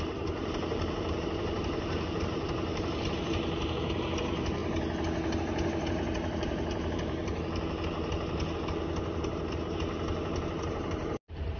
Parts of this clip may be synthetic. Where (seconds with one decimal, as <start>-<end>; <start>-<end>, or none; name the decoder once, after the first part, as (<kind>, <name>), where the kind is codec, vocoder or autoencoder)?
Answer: 0.0-4.6 (vocoder, BigVGAN v2); 5.4-7.2; 10.6-11.6